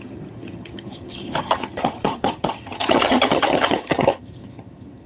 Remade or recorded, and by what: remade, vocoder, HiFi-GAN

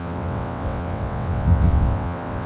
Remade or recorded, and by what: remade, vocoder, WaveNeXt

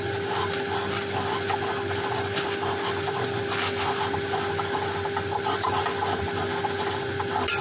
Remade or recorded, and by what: recorded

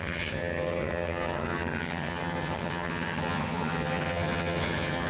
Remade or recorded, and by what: remade, vocoder, HiFi-GAN